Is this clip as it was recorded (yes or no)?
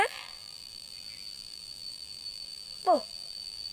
no